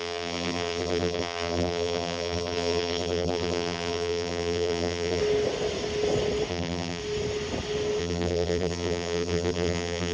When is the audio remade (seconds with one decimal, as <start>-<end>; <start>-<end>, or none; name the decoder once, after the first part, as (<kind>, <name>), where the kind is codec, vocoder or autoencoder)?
0.0-5.2 (vocoder, BigVGAN v2); 6.5-7.0; 8.0-10.1